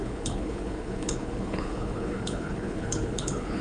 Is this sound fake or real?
fake